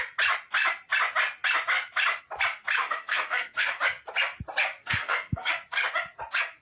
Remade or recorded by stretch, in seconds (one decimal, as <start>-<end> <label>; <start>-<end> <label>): 0.0-2.8 recorded; 2.8-3.8 remade; 3.8-4.8 recorded; 4.8-5.5 remade; 5.5-6.6 recorded